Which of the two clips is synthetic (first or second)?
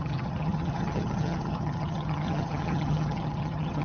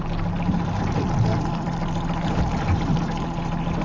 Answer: first